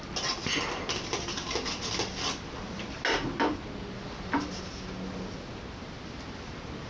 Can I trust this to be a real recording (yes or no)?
yes